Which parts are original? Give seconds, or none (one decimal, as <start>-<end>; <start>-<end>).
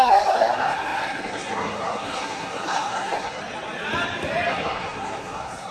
3.4-4.5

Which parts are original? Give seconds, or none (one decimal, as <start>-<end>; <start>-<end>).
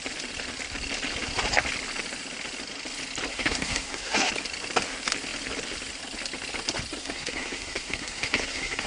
0.0-3.3; 4.3-7.0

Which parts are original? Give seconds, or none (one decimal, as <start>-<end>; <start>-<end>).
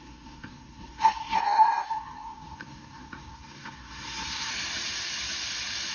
4.5-5.9